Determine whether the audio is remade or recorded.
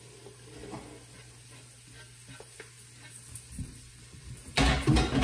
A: recorded